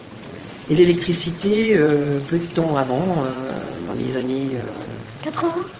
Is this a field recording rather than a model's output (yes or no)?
no